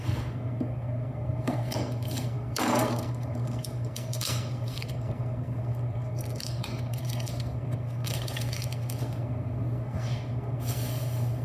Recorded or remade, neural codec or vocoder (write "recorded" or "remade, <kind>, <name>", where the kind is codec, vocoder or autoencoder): remade, codec, SNAC